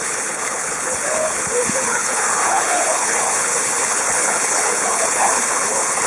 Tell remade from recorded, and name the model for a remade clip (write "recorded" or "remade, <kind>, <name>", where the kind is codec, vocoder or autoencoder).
remade, codec, HILCodec